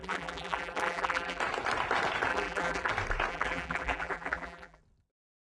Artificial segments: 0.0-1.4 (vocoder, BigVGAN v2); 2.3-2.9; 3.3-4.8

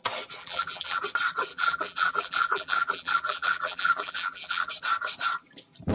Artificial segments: 0.4-1.0 (vocoder, BigVGAN v2); 1.5-4.7

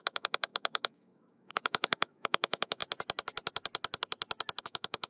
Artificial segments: 0.0-2.8 (autoencoder, DAC-VAE); 4.6-5.1

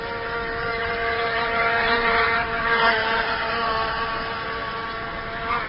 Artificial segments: 0.7-4.1 (vocoder, BigVGAN v2)

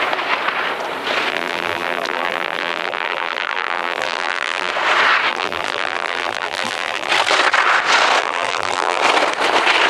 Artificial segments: 1.3-4.7 (vocoder, BigVGAN v2); 5.3-7.1; 8.2-9.0